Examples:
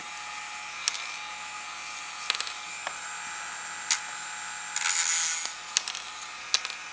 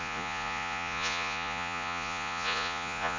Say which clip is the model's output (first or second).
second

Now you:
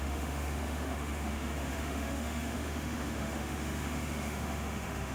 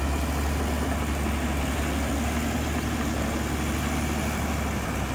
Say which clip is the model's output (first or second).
first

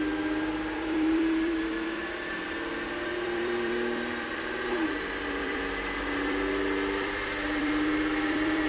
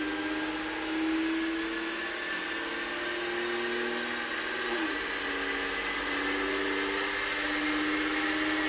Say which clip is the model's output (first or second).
first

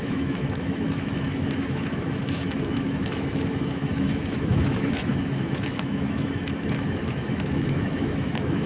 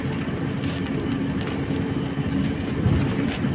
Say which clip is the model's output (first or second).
first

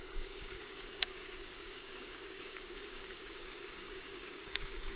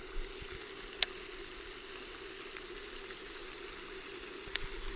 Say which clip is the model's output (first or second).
first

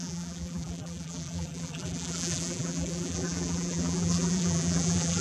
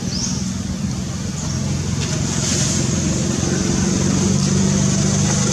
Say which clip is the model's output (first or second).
first